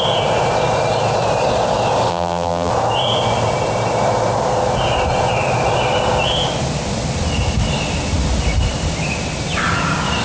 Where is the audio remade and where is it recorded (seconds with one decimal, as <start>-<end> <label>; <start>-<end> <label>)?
0.0-2.1 recorded; 2.1-2.7 remade; 2.7-10.2 recorded